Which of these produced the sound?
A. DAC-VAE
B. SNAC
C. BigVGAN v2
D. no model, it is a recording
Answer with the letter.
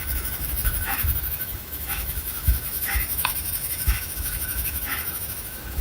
A